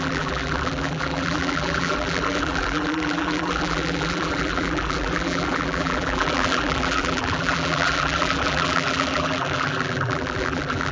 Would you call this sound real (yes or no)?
no